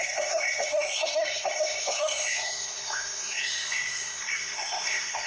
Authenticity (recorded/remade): remade